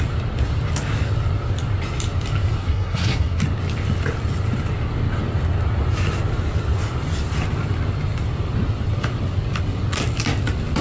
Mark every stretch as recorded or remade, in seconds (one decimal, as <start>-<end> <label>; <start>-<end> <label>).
0.0-2.6 recorded; 2.6-3.4 remade; 3.4-10.8 recorded